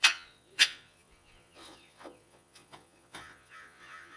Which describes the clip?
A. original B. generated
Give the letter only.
B